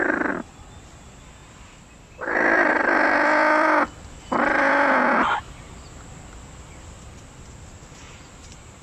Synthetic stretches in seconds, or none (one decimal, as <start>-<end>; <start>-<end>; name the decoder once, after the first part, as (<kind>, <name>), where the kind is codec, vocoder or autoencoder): none